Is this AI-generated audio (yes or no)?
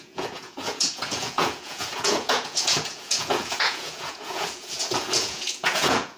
yes